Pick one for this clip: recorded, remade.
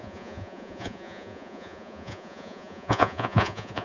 remade